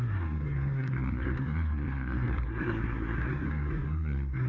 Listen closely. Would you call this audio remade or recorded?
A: remade